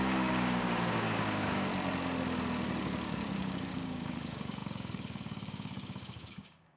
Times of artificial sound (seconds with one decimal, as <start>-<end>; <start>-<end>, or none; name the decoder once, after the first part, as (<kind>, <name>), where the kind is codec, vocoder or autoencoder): 0.0-1.7 (codec, DAC); 2.8-6.8